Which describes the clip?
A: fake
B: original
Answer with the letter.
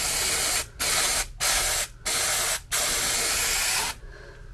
B